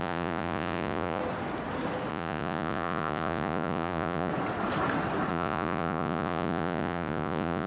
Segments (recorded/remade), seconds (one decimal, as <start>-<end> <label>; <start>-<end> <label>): 0.0-1.2 remade; 1.2-2.1 recorded; 2.1-4.3 remade; 4.3-5.3 recorded; 5.3-7.7 remade